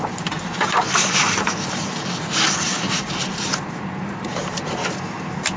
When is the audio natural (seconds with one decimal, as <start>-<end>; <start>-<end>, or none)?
none